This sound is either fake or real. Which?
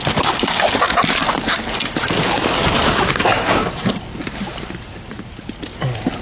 real